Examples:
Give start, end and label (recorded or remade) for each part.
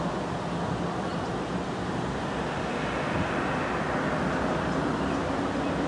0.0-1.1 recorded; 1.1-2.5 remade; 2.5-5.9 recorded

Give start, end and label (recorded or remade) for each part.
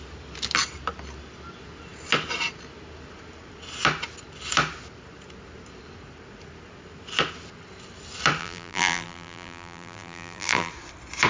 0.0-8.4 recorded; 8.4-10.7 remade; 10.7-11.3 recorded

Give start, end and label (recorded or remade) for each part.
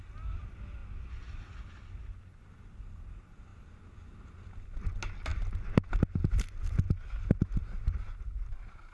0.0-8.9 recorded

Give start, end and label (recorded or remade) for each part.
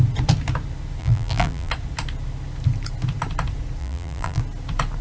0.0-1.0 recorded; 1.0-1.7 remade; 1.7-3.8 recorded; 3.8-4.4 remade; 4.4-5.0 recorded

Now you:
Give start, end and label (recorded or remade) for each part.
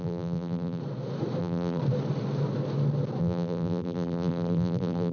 0.0-0.8 remade; 0.8-1.4 recorded; 1.4-1.8 remade; 1.8-3.2 recorded; 3.2-5.1 remade